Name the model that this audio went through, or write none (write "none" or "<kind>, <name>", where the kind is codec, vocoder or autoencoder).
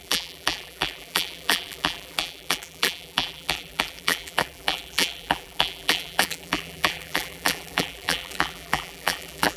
vocoder, BigVGAN v2